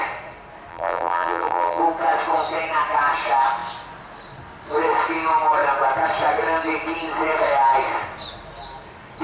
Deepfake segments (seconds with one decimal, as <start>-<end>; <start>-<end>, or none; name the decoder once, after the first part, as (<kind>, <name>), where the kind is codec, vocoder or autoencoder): 0.7-1.8 (vocoder, BigVGAN v2)